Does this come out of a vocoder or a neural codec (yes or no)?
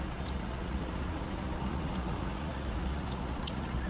yes